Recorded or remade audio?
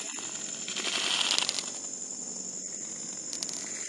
recorded